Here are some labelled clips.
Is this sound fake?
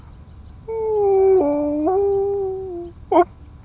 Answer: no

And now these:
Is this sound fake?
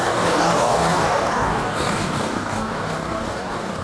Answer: yes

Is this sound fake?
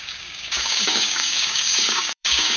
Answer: yes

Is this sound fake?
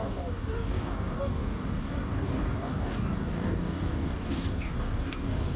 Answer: yes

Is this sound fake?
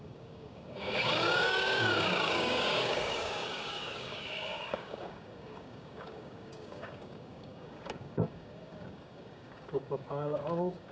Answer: yes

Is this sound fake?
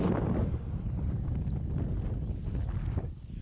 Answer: no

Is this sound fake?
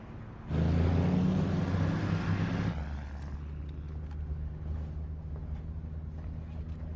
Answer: no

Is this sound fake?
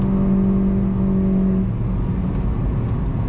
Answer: no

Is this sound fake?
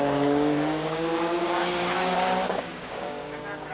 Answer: yes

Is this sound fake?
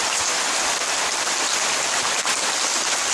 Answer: no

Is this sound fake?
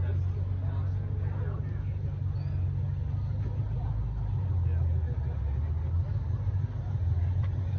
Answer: no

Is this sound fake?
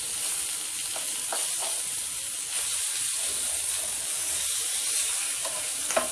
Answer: no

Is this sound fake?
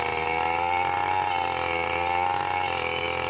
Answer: no